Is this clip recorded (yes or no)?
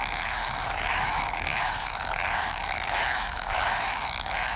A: no